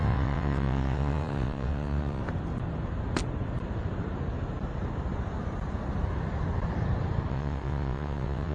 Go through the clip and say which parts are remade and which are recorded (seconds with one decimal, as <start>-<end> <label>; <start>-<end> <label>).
0.0-2.2 remade; 2.2-7.3 recorded; 7.3-8.5 remade